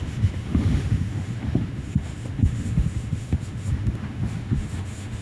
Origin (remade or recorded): remade